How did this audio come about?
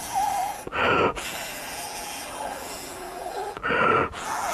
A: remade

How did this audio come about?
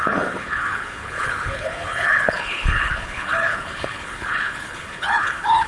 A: remade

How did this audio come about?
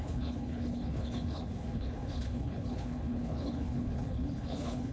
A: remade